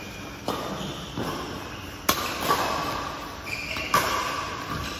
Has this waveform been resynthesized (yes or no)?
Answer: no